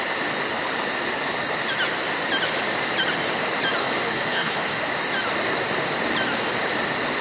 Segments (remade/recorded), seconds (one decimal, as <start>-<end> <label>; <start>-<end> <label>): 0.0-3.8 recorded; 3.8-4.9 remade; 4.9-7.2 recorded